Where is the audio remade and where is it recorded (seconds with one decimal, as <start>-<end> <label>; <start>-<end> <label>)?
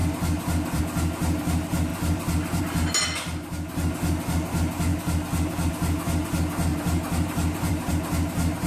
0.0-0.8 remade; 0.8-1.9 recorded; 1.9-2.6 remade; 2.6-4.9 recorded; 4.9-5.7 remade; 5.7-6.7 recorded; 6.7-7.9 remade; 7.9-8.7 recorded